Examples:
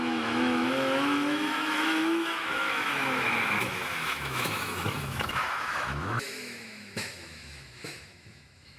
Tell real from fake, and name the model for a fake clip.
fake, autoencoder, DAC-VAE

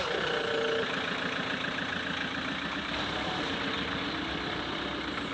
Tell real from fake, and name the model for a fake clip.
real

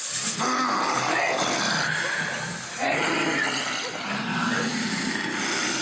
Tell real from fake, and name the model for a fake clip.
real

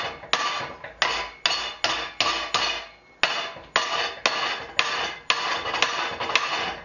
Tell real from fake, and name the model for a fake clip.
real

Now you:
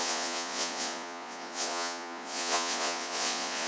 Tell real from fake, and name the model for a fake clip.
fake, vocoder, Vocos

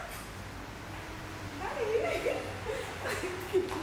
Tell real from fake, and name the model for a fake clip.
real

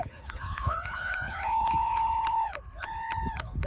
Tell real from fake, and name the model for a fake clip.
fake, codec, HILCodec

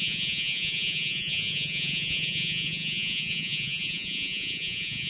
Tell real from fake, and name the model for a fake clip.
fake, vocoder, Vocos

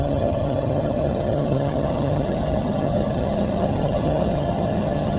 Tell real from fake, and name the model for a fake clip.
fake, vocoder, HiFi-GAN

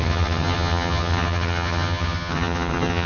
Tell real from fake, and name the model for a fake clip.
fake, vocoder, HiFi-GAN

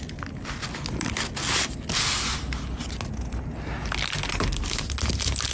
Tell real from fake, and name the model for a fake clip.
real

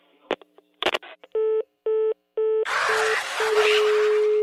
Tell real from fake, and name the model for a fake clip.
real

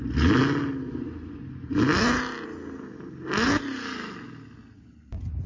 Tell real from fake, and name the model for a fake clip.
real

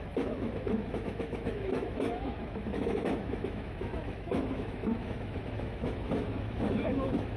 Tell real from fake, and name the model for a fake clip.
fake, autoencoder, DAC-VAE